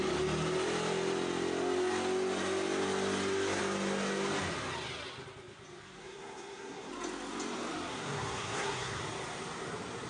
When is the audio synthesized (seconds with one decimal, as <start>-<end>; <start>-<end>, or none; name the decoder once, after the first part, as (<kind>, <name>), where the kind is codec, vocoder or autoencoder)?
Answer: 6.0-6.9 (codec, SNAC); 7.9-9.0